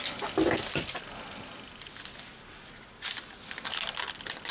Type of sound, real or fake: real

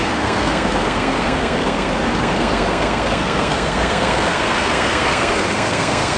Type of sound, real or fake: fake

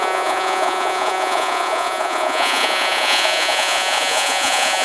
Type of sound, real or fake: fake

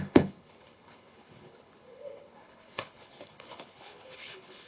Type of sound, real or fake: fake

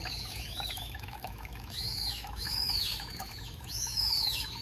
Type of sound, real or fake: fake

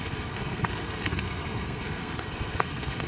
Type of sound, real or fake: fake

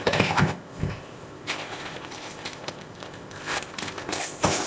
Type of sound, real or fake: fake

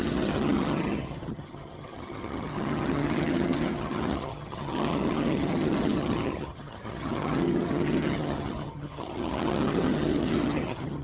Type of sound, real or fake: fake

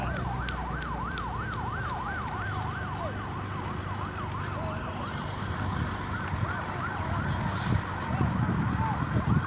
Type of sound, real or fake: real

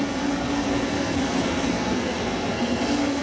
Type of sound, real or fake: fake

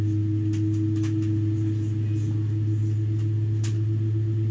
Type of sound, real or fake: real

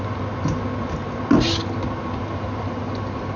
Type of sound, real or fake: real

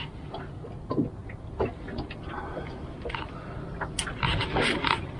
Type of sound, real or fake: real